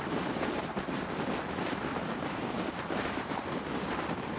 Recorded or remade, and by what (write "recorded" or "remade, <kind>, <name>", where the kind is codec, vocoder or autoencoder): remade, vocoder, BigVGAN v2